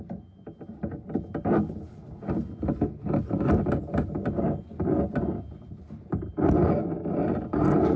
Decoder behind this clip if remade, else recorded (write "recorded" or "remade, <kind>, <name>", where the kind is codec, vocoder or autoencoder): recorded